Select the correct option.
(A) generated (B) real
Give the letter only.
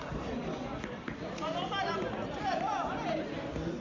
B